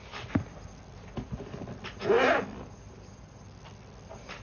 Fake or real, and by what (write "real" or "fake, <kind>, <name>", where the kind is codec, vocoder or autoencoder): real